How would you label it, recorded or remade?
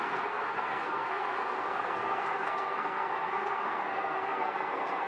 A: remade